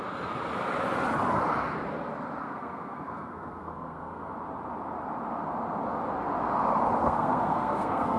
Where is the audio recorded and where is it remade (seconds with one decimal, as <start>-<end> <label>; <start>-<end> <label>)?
0.0-2.4 recorded; 2.4-4.3 remade; 4.3-7.0 recorded; 7.0-8.2 remade